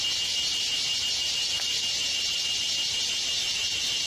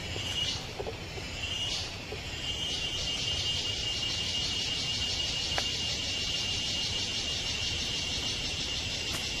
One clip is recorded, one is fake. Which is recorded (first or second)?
first